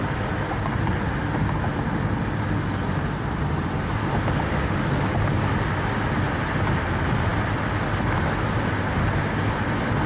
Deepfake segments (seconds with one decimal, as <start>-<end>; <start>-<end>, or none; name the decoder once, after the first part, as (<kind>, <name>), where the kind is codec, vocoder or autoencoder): none